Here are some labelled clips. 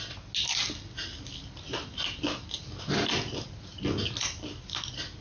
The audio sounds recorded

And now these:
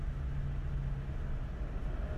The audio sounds recorded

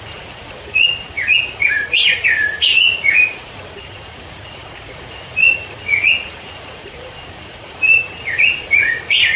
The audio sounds remade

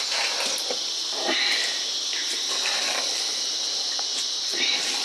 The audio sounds recorded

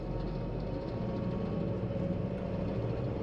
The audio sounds recorded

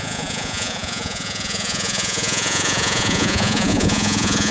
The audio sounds remade